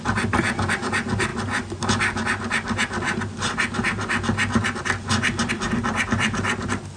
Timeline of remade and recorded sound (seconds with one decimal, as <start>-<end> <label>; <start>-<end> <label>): 0.0-7.0 recorded